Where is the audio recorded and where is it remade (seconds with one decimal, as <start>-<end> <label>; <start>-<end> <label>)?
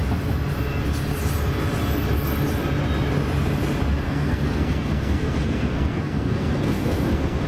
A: 0.0-4.0 recorded; 4.0-7.5 remade